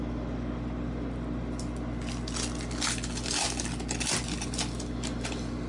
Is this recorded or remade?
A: recorded